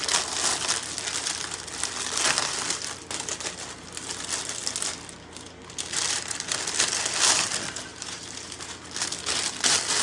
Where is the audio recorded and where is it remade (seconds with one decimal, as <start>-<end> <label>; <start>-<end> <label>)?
0.0-7.9 recorded; 7.9-8.7 remade; 8.7-10.0 recorded

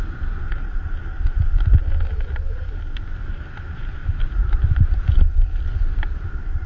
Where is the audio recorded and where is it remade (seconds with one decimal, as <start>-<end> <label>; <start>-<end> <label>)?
0.0-4.0 recorded; 4.0-5.0 remade; 5.0-6.7 recorded

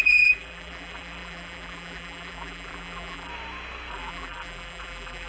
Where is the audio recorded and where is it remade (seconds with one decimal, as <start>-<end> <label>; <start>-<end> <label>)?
0.0-3.3 remade; 3.3-3.9 recorded; 3.9-5.3 remade

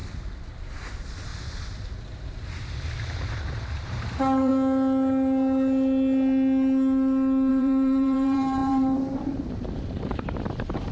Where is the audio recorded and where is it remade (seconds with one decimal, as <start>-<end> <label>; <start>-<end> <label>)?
0.0-0.9 recorded; 0.9-1.3 remade; 1.3-3.4 recorded; 3.4-4.5 remade; 4.5-7.5 recorded; 7.5-10.9 remade

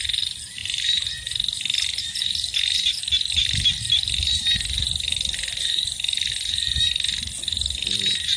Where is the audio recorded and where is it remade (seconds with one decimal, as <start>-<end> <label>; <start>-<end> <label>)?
0.0-8.4 recorded

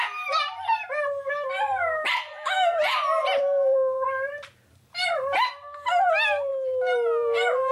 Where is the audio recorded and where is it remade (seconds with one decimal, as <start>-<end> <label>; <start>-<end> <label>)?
0.0-6.5 remade; 6.5-7.7 recorded

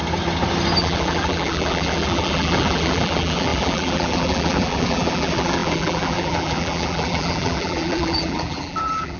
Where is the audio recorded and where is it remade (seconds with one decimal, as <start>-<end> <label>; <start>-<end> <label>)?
0.0-0.8 recorded; 0.8-9.2 remade